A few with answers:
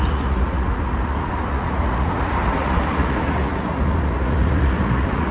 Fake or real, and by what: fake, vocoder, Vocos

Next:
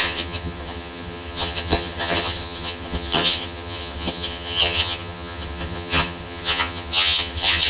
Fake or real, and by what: fake, vocoder, HiFi-GAN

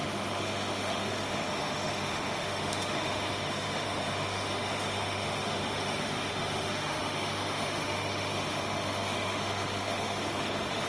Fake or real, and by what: fake, autoencoder, DAC-VAE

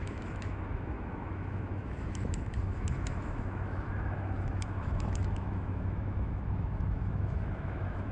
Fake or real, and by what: fake, autoencoder, DAC-VAE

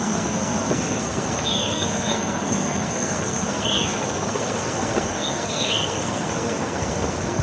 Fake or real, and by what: fake, codec, SNAC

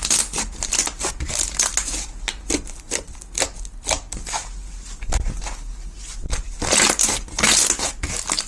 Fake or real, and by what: real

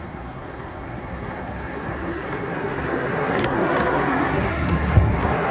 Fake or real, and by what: fake, codec, SNAC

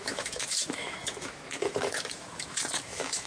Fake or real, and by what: fake, autoencoder, DAC-VAE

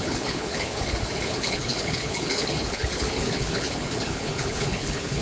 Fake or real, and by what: fake, codec, HILCodec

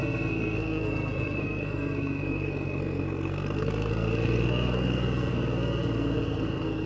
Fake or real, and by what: fake, codec, SNAC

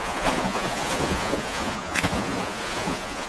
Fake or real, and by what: fake, vocoder, Vocos